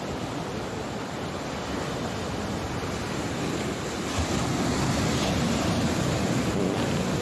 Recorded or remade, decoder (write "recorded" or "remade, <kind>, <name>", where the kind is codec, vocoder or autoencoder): recorded